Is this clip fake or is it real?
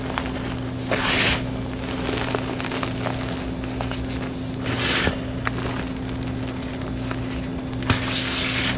real